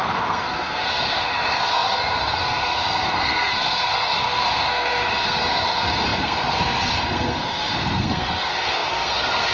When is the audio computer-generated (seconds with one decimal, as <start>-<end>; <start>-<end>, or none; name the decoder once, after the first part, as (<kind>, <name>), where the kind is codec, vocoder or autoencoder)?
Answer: 0.0-9.5 (codec, SNAC)